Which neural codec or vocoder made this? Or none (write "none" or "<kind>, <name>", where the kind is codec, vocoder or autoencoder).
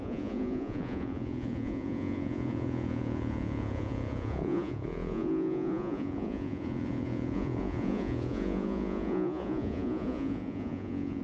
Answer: vocoder, Vocos